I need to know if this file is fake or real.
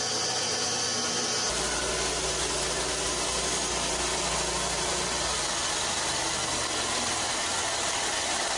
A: real